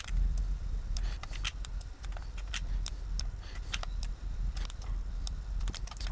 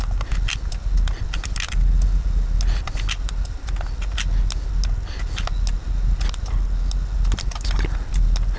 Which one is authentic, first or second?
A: second